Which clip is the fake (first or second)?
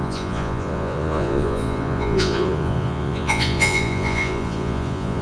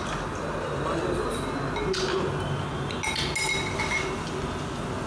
first